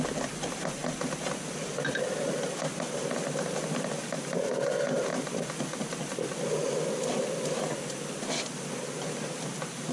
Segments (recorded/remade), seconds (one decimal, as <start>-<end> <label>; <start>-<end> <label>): 0.0-9.9 recorded